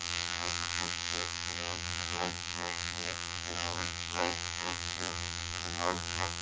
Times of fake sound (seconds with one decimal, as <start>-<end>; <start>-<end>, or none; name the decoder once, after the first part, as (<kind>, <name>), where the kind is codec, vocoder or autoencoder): 0.0-6.4 (vocoder, BigVGAN v2)